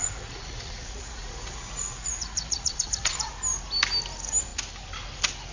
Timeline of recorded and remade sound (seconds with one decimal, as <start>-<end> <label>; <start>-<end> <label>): 0.0-3.3 remade; 3.3-5.5 recorded